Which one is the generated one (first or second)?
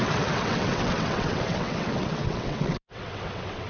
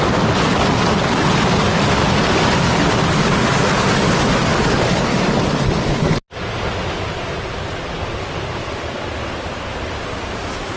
first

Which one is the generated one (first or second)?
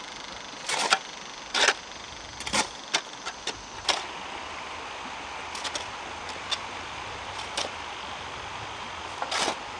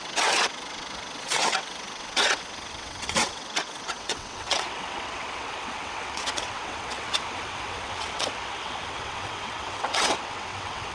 second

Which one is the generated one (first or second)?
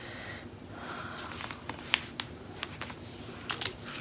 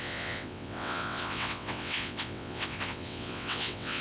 second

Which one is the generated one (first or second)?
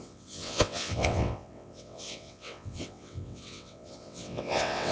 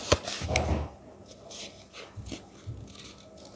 first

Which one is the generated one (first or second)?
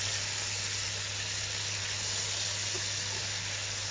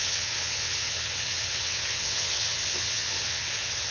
second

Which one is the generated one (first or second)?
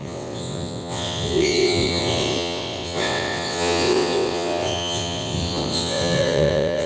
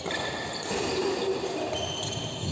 first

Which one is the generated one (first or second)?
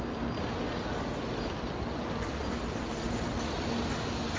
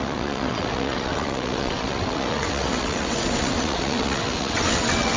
second